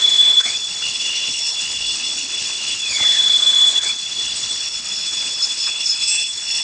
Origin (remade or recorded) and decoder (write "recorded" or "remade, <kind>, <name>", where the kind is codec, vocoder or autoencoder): remade, codec, HILCodec